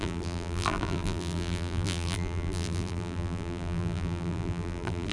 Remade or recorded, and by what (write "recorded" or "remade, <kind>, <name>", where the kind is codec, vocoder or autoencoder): remade, vocoder, BigVGAN v2